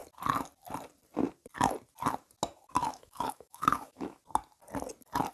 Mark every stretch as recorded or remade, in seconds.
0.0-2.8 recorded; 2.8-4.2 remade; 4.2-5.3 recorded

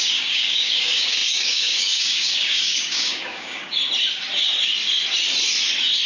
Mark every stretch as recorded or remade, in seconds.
0.0-3.8 remade; 3.8-6.1 recorded

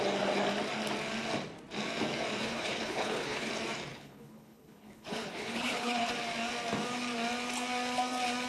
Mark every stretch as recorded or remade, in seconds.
0.0-2.4 recorded; 2.4-3.5 remade; 3.5-3.9 recorded; 3.9-6.1 remade; 6.1-8.5 recorded